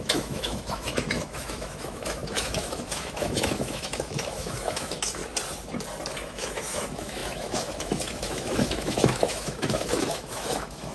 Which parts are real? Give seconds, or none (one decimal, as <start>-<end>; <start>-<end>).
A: 5.2-6.1